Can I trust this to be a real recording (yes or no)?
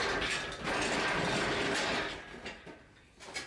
yes